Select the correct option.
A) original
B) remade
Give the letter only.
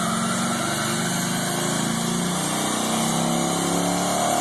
A